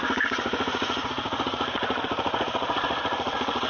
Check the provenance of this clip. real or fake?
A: fake